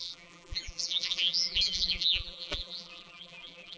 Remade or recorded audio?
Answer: remade